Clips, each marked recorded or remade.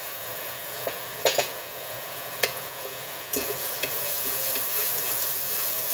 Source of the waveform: remade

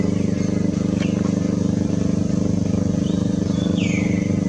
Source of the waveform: recorded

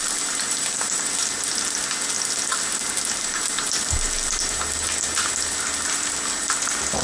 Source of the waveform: recorded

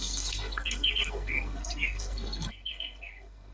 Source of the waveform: remade